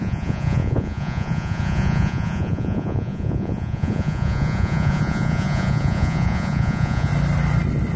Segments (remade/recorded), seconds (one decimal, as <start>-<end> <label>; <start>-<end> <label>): 0.0-7.1 remade; 7.1-8.0 recorded